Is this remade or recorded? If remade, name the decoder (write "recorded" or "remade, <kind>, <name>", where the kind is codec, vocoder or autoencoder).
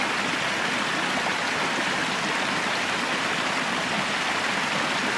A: recorded